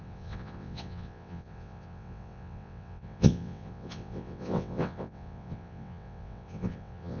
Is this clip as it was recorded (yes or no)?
no